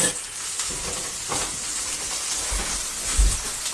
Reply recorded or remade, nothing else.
recorded